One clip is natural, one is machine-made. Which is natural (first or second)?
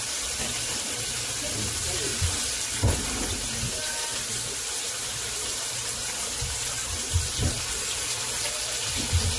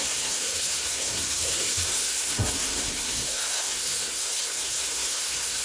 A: first